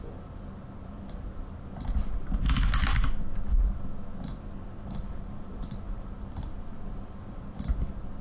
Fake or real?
real